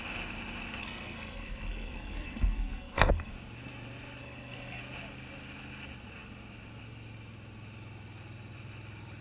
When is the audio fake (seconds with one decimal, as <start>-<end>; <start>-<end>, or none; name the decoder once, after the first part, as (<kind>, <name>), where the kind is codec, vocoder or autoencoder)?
0.8-3.3 (codec, SNAC); 4.2-4.8